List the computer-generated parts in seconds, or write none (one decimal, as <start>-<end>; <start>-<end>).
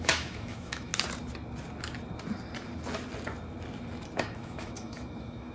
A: 0.0-0.9; 4.2-5.5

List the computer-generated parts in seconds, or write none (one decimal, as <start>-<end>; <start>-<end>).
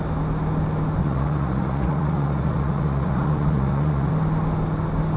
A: 1.0-4.1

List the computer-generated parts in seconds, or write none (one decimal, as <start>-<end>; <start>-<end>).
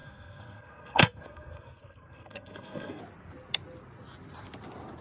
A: 0.0-3.0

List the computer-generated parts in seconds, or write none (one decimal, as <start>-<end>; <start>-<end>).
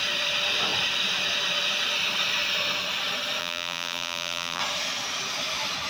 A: 3.4-4.6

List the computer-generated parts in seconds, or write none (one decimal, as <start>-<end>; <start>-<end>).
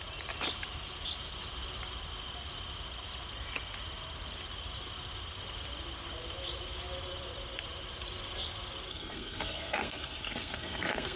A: 8.9-11.2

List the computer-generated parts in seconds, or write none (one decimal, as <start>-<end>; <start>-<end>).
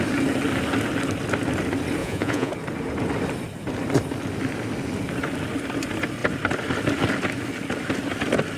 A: 2.0-2.5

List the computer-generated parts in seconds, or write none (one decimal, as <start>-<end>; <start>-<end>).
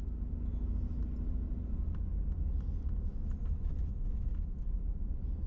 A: 4.3-5.0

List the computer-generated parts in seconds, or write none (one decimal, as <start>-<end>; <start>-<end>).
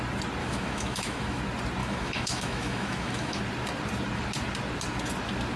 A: 0.4-1.4; 1.8-3.4